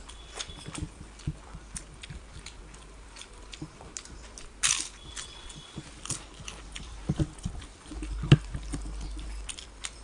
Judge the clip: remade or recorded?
recorded